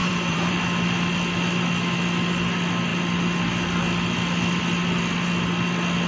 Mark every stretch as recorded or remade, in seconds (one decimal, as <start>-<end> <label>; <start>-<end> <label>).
0.0-0.6 remade; 0.6-6.1 recorded